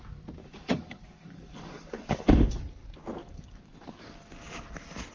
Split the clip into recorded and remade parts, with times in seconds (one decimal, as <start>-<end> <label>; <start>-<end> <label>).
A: 0.0-0.4 recorded; 0.4-2.6 remade; 2.6-3.2 recorded; 3.2-4.0 remade; 4.0-5.1 recorded